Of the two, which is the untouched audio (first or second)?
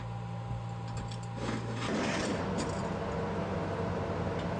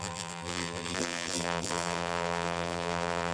first